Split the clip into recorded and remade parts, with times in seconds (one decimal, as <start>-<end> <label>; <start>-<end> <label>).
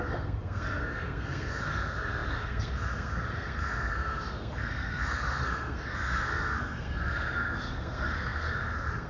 0.0-9.1 remade